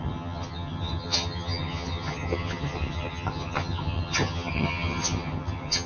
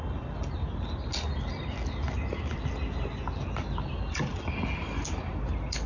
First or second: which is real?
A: second